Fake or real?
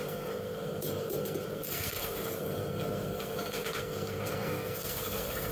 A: fake